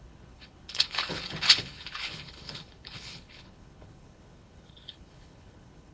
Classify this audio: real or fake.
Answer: fake